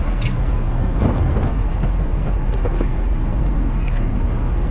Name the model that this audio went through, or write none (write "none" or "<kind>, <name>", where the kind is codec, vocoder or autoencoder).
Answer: codec, SNAC